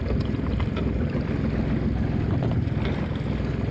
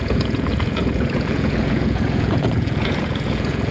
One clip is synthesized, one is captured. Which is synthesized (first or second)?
second